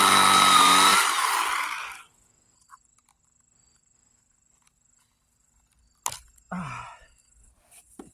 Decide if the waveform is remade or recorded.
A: recorded